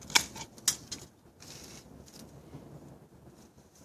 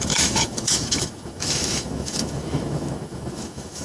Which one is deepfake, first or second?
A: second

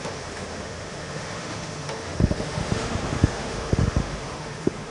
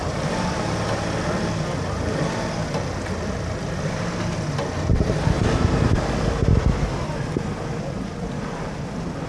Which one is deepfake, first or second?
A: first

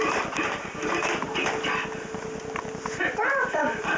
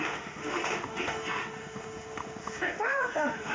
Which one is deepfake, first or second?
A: second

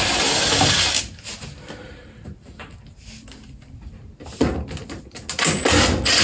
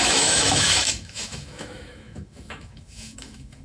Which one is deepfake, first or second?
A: second